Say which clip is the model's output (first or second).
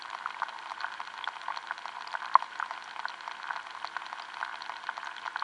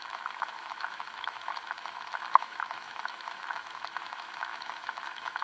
second